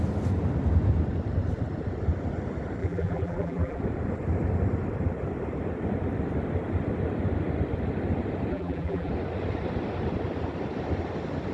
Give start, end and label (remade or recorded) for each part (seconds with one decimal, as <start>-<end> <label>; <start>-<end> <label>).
0.0-2.8 recorded; 2.8-3.8 remade; 3.8-8.5 recorded; 8.5-9.1 remade; 9.1-11.5 recorded